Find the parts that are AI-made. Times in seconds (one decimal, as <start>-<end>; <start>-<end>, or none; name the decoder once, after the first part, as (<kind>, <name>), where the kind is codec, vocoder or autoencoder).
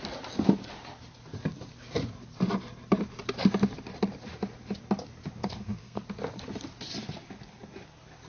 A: 5.4-6.0 (codec, SNAC)